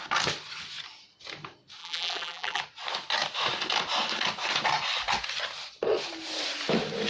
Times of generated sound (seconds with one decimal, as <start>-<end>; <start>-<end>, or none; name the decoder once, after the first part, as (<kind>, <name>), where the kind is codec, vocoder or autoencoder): 1.8-2.6 (vocoder, BigVGAN v2)